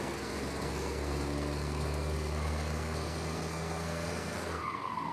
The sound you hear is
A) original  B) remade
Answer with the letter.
B